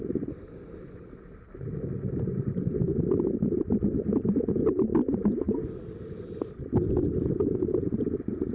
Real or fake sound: real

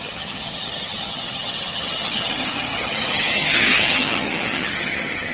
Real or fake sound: fake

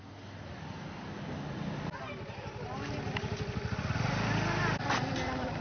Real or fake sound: real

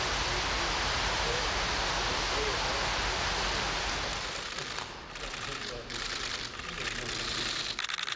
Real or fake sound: real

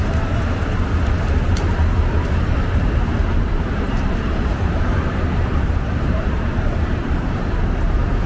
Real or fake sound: fake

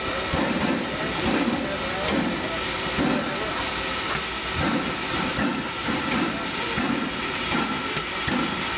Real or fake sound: real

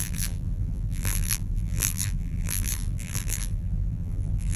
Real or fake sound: fake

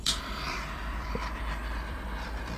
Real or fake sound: fake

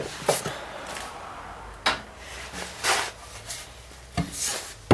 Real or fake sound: real